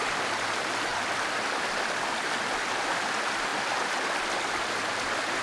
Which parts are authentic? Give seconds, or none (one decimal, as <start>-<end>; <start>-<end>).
none